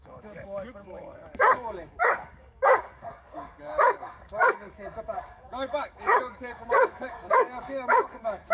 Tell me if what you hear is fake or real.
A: fake